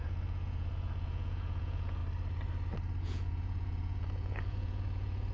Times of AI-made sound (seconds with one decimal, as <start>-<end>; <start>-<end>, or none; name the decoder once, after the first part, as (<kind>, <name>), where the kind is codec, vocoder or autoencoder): 0.0-2.0 (vocoder, Vocos); 3.0-5.3